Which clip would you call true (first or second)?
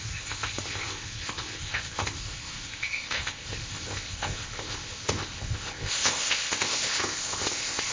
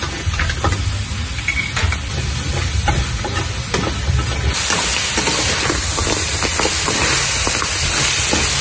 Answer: second